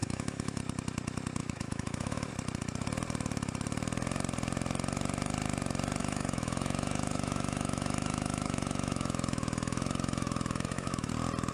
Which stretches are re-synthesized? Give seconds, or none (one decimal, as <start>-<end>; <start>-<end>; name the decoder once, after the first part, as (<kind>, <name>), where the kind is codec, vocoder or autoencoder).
0.0-0.6 (autoencoder, DAC-VAE); 1.4-2.3; 6.0-11.1